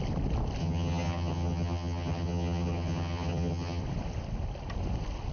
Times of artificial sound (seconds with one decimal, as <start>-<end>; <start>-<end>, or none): 0.6-3.8